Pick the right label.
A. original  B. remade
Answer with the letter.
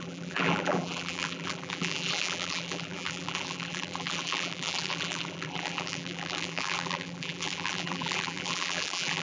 B